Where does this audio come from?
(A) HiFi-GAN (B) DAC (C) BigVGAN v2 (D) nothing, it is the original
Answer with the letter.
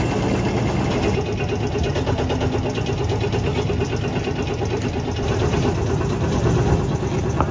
D